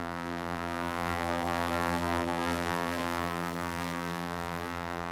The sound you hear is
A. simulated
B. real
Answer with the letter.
A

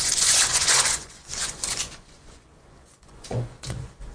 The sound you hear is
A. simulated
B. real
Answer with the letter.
A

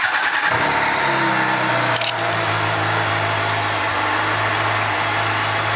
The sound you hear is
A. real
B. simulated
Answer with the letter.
A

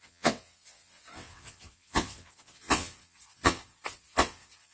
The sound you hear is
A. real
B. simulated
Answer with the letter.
B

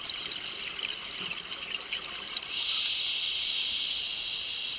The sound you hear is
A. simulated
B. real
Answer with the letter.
B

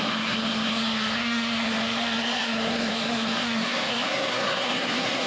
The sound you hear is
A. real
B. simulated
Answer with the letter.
B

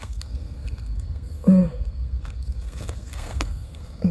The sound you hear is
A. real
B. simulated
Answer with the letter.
B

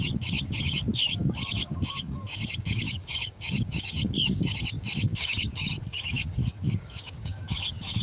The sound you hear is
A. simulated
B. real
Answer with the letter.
A